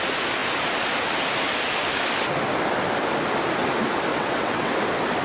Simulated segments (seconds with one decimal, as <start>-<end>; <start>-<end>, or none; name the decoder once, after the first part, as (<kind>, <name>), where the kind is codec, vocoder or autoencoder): 4.1-4.7 (vocoder, WaveNeXt)